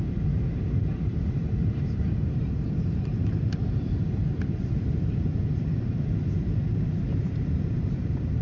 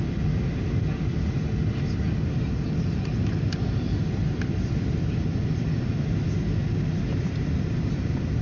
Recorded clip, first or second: second